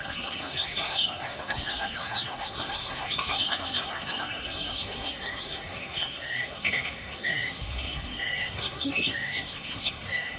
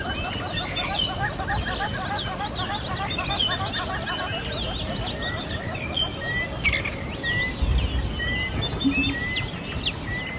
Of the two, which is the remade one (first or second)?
first